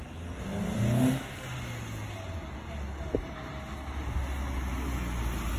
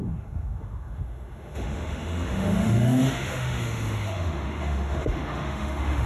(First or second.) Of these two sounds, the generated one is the second